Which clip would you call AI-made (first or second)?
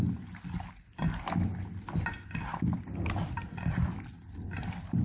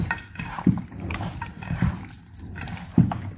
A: second